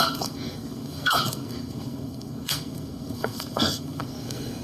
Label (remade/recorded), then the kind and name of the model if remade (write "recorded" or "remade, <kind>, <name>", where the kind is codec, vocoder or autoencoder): remade, codec, SNAC